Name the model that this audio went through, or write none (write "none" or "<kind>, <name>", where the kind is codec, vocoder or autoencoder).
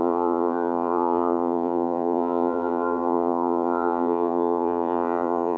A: vocoder, BigVGAN v2